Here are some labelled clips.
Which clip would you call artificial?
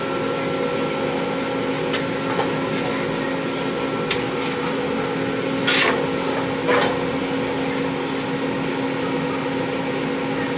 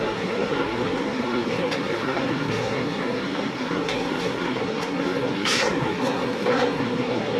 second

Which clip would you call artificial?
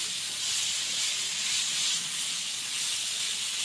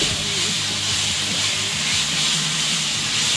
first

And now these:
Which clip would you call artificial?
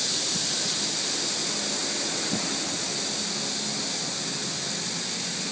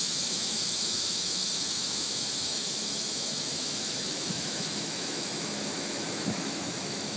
second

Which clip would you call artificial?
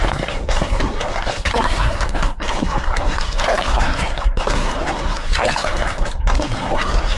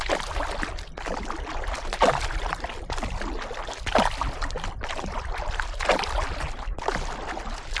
first